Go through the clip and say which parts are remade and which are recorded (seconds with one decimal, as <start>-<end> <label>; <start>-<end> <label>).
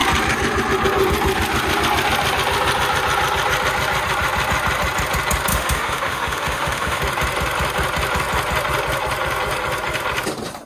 0.0-5.5 recorded; 5.5-7.0 remade; 7.0-10.7 recorded